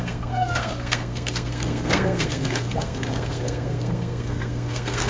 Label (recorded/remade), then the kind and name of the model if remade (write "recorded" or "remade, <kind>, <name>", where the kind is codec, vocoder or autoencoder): remade, codec, SNAC